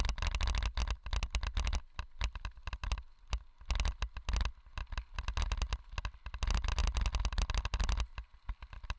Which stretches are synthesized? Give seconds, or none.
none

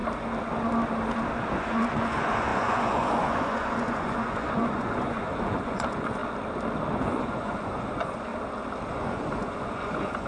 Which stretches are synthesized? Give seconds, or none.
1.5-6.2 (vocoder, Vocos); 6.8-8.3; 8.9-10.3

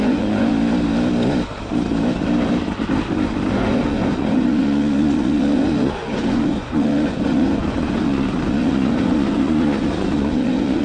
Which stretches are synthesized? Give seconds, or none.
0.0-0.5 (vocoder, Vocos); 3.5-10.8

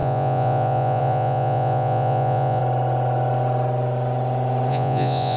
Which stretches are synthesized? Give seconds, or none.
0.0-2.6 (vocoder, Vocos); 4.7-5.4

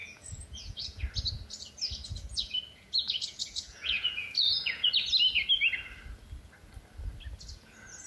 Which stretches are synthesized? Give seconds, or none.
0.0-1.0 (vocoder, Vocos); 2.0-4.9

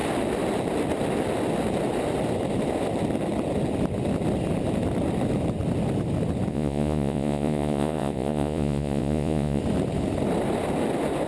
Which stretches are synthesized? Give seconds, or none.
6.5-9.6 (vocoder, Vocos)